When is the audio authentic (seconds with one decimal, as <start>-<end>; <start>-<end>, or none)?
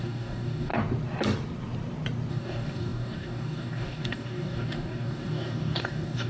0.7-2.3